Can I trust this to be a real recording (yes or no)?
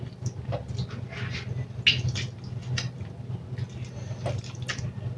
yes